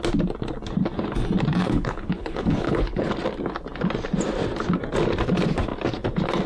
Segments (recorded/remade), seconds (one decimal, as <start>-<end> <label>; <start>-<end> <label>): 0.0-1.6 recorded; 1.6-3.1 remade; 3.1-6.5 recorded